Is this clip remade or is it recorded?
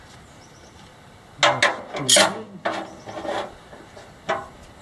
recorded